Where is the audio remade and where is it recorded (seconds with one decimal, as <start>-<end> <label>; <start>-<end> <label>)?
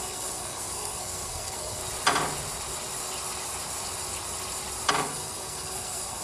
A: 0.0-1.8 remade; 1.8-4.9 recorded; 4.9-6.2 remade